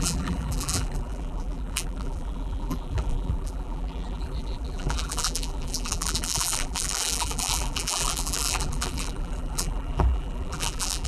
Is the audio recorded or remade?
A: remade